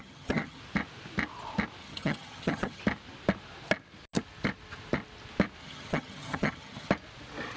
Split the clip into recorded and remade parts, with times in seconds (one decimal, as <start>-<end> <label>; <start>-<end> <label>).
0.0-0.6 remade; 0.6-1.8 recorded; 1.8-2.8 remade; 2.8-5.6 recorded; 5.6-6.9 remade; 6.9-7.6 recorded